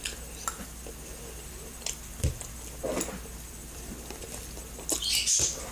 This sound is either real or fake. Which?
real